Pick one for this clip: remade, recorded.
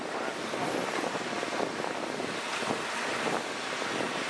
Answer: recorded